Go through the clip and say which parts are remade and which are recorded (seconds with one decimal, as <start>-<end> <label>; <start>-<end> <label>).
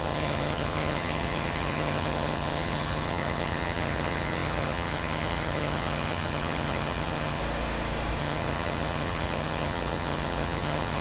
0.0-7.4 remade; 7.4-8.2 recorded; 8.2-11.0 remade